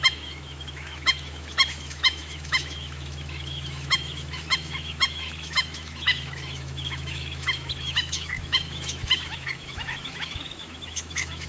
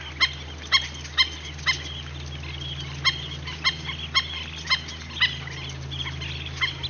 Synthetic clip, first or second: first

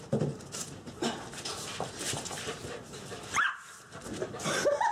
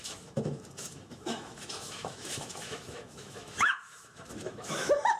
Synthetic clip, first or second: second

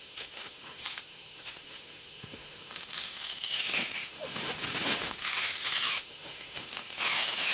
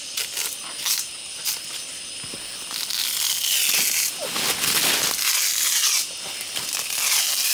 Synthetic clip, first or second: first